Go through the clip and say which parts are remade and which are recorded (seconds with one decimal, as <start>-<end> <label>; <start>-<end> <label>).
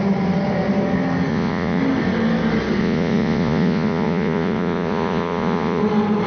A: 0.0-1.3 recorded; 1.3-1.8 remade; 1.8-2.8 recorded; 2.8-5.8 remade; 5.8-6.3 recorded